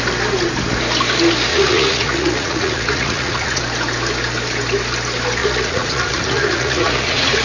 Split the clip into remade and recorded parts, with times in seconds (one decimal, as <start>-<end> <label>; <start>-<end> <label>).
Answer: 0.0-1.5 recorded; 1.5-3.6 remade; 3.6-5.4 recorded; 5.4-7.4 remade